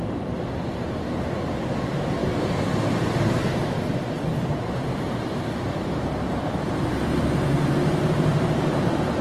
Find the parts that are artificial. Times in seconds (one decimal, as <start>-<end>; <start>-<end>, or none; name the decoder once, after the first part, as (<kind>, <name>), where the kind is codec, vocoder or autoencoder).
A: 2.2-3.5 (vocoder, BigVGAN v2); 4.3-9.2